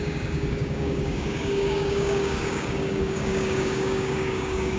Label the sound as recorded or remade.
remade